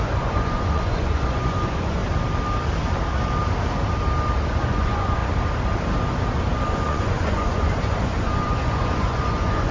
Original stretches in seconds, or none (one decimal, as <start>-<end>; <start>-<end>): 2.0-4.6; 5.2-6.7